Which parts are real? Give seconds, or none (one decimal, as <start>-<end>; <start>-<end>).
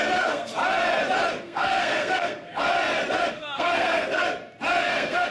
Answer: 0.5-1.4; 2.7-3.3; 4.2-4.8